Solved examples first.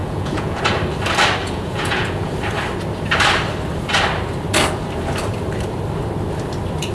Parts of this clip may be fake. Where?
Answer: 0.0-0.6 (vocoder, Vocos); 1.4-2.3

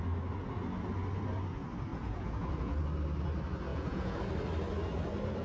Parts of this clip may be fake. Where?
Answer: 1.9-2.8 (vocoder, Vocos); 3.7-4.3

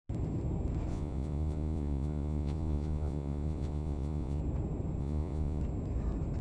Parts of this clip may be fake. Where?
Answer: 0.9-4.4 (vocoder, Vocos); 5.0-5.6

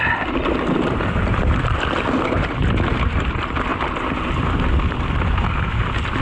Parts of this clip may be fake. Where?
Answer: none

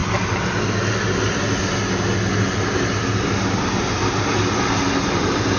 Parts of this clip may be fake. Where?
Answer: none

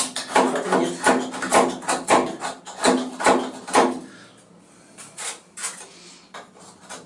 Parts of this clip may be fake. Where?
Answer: none

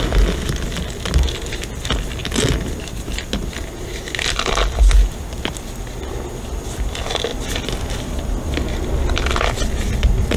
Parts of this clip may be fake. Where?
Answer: none